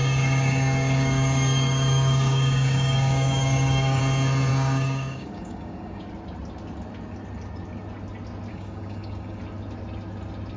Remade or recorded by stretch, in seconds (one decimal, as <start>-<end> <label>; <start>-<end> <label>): 0.0-4.0 remade; 4.0-4.5 recorded; 4.5-6.0 remade; 6.0-8.5 recorded; 8.5-9.4 remade; 9.4-10.6 recorded